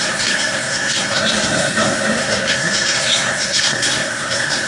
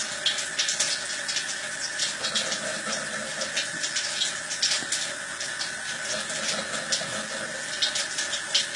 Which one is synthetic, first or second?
first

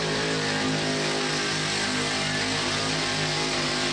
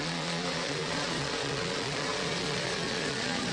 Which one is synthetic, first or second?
second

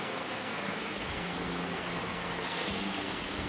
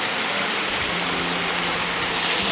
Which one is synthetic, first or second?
first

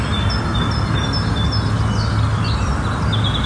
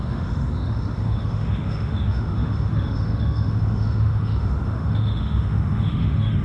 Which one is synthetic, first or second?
second